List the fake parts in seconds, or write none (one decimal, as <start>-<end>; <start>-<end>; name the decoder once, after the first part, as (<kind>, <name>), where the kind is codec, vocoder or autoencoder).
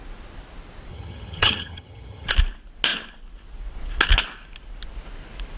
0.9-2.3 (vocoder, HiFi-GAN)